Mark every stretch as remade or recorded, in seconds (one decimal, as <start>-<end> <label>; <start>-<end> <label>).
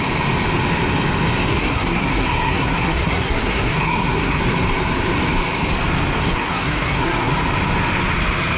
0.0-1.5 recorded; 1.5-4.4 remade; 4.4-6.2 recorded; 6.2-7.3 remade; 7.3-8.6 recorded